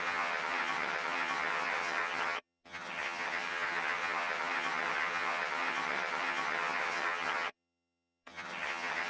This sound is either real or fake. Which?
fake